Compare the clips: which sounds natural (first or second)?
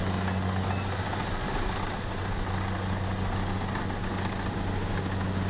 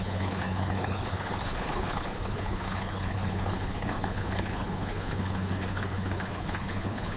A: first